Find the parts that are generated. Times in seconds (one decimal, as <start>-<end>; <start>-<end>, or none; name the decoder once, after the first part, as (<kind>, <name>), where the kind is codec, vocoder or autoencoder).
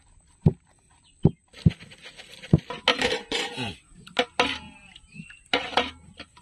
2.9-3.7 (vocoder, BigVGAN v2)